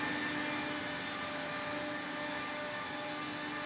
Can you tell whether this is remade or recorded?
recorded